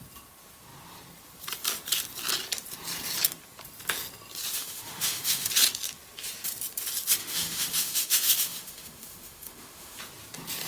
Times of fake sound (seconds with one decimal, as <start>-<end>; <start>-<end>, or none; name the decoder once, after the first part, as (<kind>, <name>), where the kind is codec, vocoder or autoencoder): 4.5-5.5 (autoencoder, DAC-VAE); 7.2-10.0